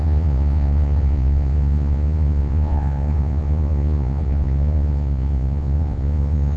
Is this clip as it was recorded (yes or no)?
no